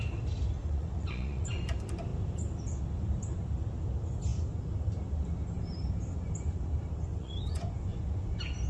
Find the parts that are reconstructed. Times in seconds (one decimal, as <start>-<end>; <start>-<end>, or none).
0.6-1.6; 7.1-8.2